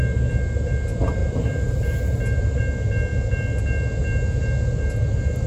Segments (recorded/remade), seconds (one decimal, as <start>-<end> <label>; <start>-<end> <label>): 0.0-1.2 recorded; 1.2-2.6 remade; 2.6-5.5 recorded